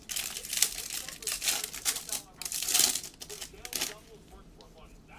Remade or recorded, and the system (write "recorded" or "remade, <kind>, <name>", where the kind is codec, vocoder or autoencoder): recorded